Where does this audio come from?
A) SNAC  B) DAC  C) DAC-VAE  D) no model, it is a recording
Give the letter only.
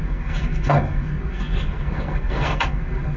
A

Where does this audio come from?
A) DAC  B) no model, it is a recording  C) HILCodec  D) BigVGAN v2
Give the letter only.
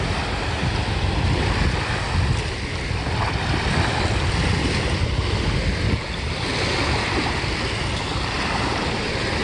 B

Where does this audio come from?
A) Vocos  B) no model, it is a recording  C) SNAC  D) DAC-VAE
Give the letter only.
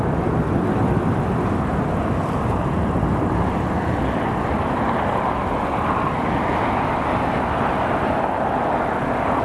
B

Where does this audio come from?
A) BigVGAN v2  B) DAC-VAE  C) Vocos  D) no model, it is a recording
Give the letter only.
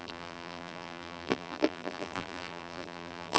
A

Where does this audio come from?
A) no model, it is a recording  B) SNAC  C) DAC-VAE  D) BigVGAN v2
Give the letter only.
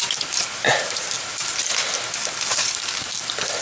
A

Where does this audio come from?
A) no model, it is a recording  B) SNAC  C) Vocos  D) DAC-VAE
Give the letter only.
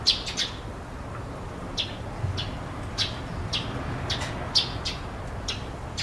A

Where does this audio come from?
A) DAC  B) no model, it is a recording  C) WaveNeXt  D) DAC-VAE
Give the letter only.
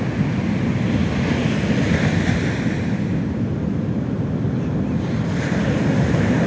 B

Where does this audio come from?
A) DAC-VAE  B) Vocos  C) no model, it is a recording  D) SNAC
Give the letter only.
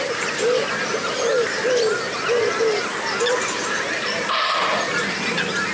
C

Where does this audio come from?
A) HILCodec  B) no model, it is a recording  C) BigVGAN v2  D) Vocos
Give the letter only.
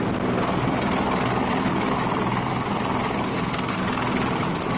B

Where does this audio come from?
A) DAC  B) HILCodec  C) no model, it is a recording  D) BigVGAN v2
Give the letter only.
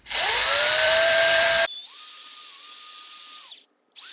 D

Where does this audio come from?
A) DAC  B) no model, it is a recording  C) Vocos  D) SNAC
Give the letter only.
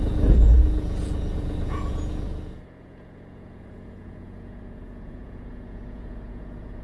C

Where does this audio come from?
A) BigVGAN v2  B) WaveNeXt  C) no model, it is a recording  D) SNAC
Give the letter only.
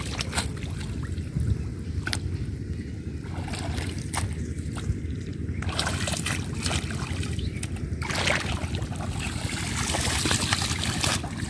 C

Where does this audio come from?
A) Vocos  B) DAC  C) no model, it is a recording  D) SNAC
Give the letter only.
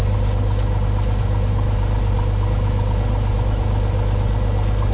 C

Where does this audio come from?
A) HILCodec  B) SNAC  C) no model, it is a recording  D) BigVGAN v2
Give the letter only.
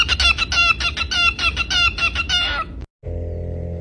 C